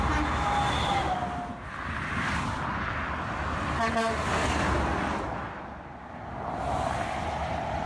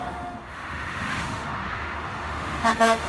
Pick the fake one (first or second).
second